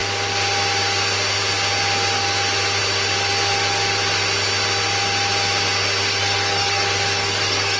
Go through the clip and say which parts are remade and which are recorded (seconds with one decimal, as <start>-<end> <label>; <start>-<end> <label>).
0.0-6.2 recorded; 6.2-7.8 remade